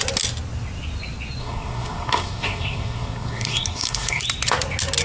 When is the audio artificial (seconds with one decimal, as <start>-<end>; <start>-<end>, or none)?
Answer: 1.4-4.2